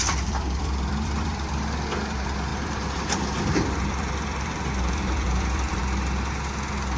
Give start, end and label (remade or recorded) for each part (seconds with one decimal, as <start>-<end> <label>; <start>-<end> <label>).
0.0-5.8 remade; 5.8-7.0 recorded